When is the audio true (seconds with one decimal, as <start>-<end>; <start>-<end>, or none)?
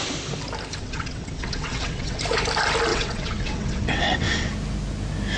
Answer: 0.0-0.8; 2.2-2.9; 4.5-5.4